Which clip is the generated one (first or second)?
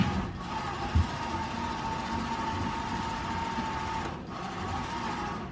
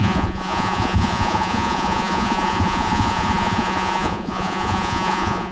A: second